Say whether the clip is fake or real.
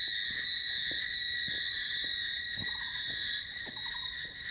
real